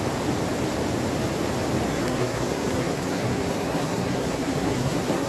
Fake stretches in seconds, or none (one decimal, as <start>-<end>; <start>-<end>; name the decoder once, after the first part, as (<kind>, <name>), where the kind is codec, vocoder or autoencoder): 1.9-5.3 (codec, SNAC)